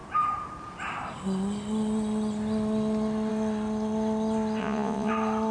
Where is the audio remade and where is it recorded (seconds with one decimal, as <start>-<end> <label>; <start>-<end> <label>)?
0.0-4.6 recorded; 4.6-5.1 remade; 5.1-5.5 recorded